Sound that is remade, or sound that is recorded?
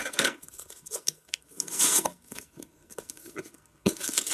remade